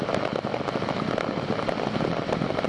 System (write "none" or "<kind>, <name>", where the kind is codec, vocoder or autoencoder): none